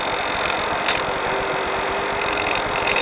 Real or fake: real